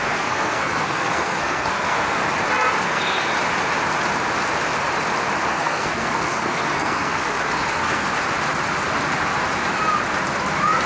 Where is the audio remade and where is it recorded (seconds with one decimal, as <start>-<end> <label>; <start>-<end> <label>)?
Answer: 0.0-2.2 remade; 2.2-2.8 recorded; 2.8-3.3 remade; 3.3-5.5 recorded; 5.5-8.1 remade; 8.1-10.9 recorded